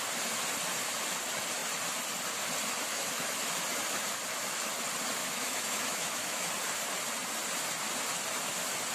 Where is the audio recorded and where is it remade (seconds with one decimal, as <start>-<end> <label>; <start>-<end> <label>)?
0.0-2.9 recorded; 2.9-3.5 remade; 3.5-5.2 recorded; 5.2-6.5 remade; 6.5-8.9 recorded